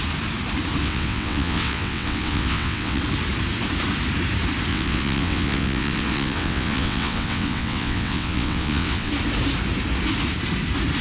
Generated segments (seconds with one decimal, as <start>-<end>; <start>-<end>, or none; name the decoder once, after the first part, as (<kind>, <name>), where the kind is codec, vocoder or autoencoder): 0.8-3.0 (vocoder, WaveNeXt); 4.7-9.1